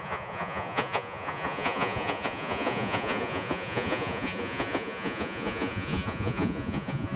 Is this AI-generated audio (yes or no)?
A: yes